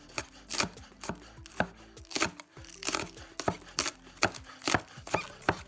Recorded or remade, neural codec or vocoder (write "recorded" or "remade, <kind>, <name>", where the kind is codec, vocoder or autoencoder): recorded